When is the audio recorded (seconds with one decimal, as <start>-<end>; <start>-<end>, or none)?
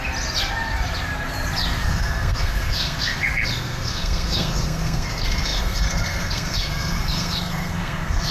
0.0-1.8